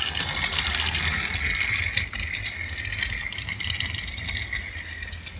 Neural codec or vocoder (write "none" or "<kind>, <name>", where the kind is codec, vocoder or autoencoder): none